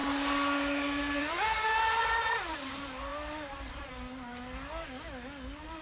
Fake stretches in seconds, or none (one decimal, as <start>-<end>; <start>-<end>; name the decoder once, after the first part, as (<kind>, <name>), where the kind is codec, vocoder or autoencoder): none